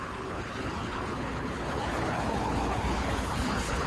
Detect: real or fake fake